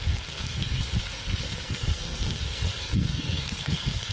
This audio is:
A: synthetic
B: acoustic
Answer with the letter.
A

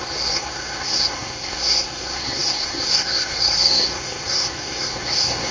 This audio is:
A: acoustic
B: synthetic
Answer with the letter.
B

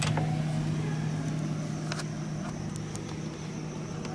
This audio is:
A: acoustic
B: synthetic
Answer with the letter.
A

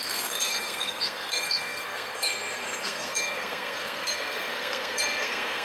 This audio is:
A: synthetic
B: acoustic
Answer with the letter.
A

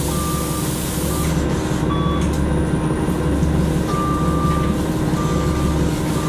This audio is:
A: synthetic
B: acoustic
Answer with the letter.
B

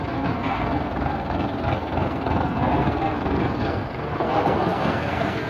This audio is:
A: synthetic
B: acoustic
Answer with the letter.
A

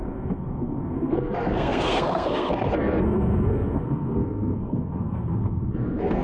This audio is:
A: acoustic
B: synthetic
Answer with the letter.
B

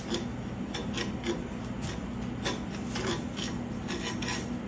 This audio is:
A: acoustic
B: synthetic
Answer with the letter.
A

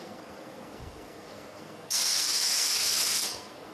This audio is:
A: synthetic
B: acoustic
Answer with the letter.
A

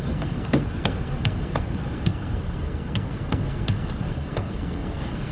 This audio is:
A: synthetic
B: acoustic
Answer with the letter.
A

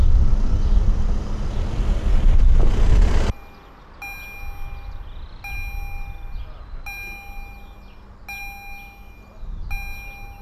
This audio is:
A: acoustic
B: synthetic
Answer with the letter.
A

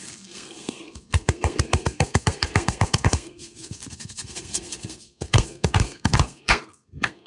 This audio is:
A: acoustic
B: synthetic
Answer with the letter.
B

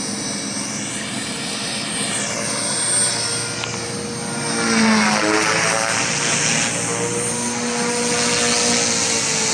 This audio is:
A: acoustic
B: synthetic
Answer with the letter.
A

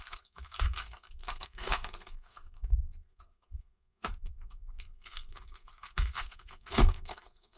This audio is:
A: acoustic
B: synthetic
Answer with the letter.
B